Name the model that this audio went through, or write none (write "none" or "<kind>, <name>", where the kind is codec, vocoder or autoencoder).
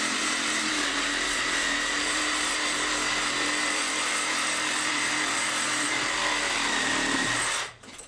vocoder, BigVGAN v2